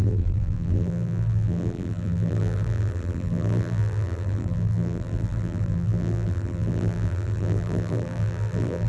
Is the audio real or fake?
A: fake